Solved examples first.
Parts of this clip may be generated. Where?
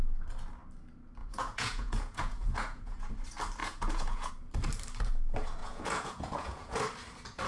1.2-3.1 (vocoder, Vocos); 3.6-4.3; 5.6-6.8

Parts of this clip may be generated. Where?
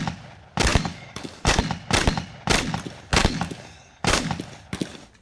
0.7-1.6 (codec, DAC); 3.2-4.3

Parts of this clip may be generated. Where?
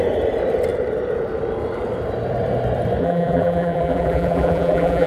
3.0-5.1 (vocoder, BigVGAN v2)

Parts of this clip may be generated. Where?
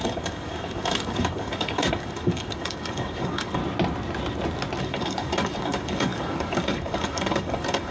0.0-3.6 (codec, DAC); 4.8-7.9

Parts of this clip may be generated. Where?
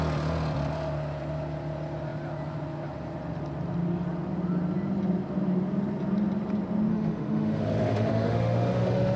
6.9-9.2 (autoencoder, DAC-VAE)